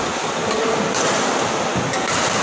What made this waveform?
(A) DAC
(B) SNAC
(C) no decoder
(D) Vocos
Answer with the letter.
C